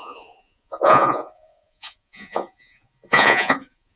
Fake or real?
fake